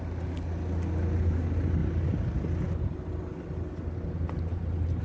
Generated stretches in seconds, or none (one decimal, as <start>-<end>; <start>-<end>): none